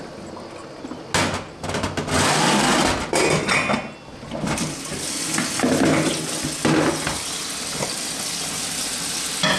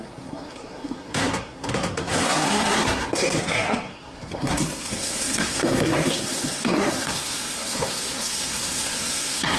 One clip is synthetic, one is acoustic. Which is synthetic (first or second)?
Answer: second